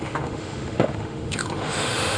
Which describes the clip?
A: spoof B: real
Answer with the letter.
A